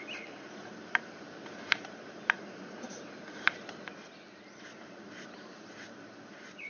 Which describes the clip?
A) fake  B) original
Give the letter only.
A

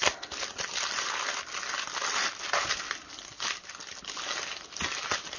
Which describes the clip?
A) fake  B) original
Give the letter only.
A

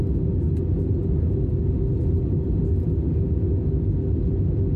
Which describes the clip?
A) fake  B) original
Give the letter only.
B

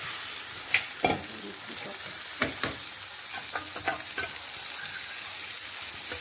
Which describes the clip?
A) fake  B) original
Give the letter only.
B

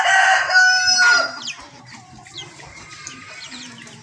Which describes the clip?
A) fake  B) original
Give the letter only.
A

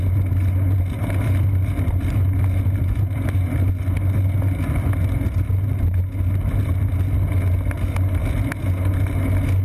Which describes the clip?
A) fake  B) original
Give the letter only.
B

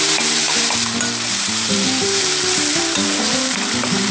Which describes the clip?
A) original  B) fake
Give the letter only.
B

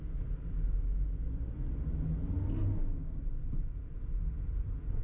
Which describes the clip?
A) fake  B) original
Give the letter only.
B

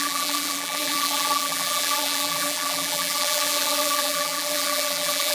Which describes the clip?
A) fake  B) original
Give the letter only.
A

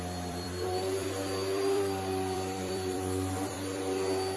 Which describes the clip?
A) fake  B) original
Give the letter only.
A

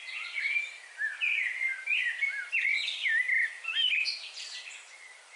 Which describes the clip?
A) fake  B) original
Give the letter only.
B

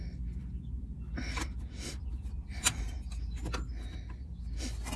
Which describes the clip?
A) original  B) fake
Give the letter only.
A